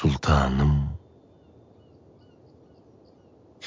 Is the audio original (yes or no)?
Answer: yes